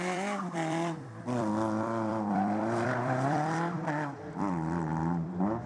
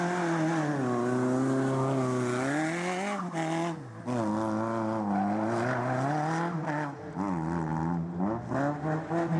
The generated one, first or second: first